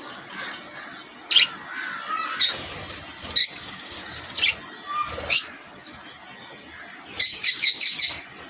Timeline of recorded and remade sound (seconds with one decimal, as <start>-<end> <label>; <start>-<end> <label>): 0.0-3.4 recorded; 3.4-4.0 remade; 4.0-7.3 recorded; 7.3-8.0 remade; 8.0-8.5 recorded